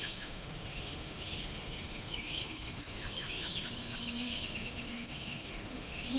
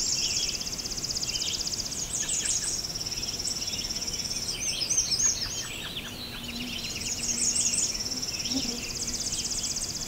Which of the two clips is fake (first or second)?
first